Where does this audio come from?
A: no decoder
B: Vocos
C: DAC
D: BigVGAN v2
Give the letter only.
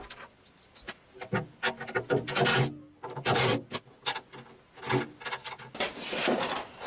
A